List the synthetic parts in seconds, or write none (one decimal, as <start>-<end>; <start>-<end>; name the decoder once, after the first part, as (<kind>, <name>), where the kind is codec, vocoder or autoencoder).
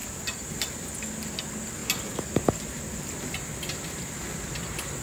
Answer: none